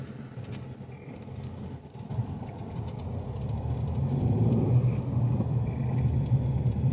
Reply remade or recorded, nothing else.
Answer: remade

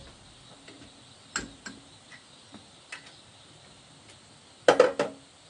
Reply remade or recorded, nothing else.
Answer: recorded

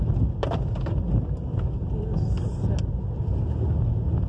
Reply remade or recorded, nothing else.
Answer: recorded